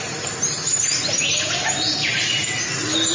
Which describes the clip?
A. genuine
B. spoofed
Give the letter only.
A